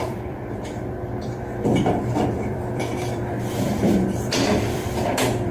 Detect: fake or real fake